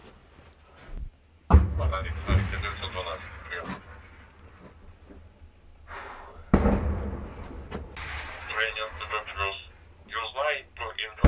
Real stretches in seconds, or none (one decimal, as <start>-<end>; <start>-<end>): 0.0-11.3